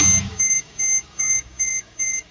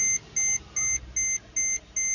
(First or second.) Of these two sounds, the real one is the second